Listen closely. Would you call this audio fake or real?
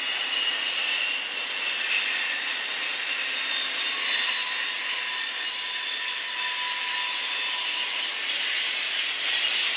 real